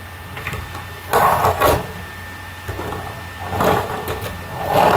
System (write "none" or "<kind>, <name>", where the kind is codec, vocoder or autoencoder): none